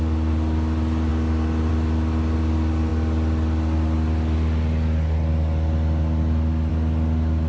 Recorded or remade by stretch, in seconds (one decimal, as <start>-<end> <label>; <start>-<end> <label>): 0.0-7.5 recorded